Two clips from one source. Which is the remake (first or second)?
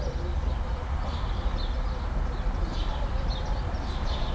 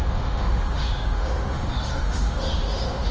second